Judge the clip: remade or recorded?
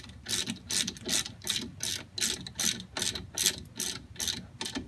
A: recorded